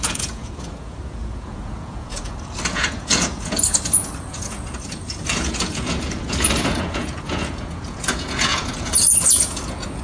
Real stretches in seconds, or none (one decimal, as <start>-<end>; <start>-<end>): none